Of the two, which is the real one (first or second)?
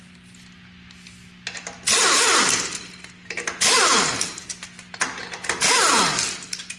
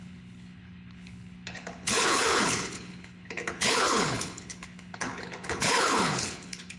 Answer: first